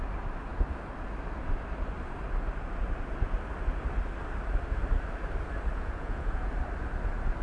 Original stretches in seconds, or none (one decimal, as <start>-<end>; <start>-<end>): 0.0-5.7; 6.5-7.4